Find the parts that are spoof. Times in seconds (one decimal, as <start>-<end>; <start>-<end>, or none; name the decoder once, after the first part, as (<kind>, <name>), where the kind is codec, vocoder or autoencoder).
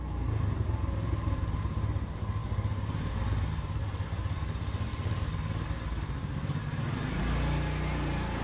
none